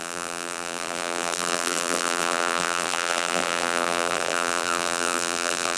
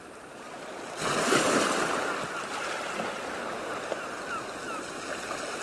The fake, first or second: first